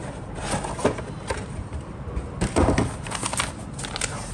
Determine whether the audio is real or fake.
real